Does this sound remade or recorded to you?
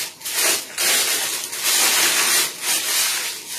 recorded